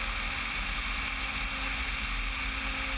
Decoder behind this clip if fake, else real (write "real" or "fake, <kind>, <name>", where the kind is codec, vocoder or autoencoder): real